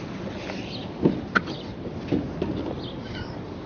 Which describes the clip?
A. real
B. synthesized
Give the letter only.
A